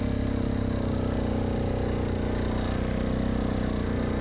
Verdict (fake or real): real